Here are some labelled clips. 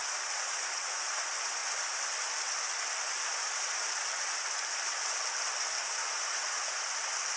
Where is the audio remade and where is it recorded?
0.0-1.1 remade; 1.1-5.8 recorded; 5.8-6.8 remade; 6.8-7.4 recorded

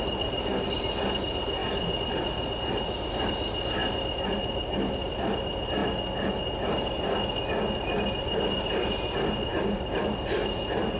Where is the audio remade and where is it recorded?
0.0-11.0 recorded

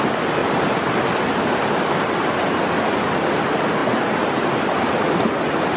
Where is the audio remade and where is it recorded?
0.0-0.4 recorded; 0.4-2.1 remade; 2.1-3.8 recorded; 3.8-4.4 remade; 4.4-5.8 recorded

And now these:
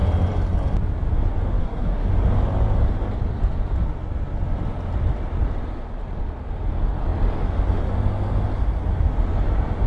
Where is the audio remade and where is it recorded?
0.0-1.6 recorded; 1.6-2.1 remade; 2.1-9.9 recorded

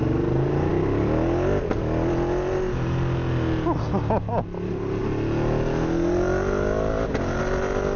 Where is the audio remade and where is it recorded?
0.0-8.0 recorded

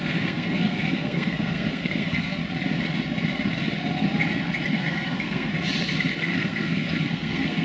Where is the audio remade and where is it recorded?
0.0-2.4 remade; 2.4-4.7 recorded; 4.7-5.5 remade; 5.5-6.2 recorded; 6.2-7.6 remade

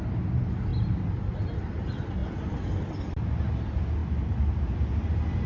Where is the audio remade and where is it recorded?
0.0-5.5 recorded

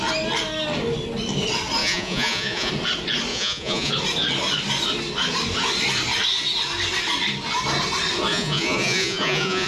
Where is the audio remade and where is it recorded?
0.0-1.8 recorded; 1.8-2.7 remade; 2.7-3.3 recorded; 3.3-3.9 remade; 3.9-8.3 recorded; 8.3-9.7 remade